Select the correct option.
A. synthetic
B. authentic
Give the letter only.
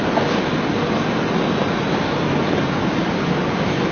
B